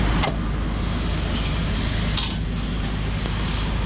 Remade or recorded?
recorded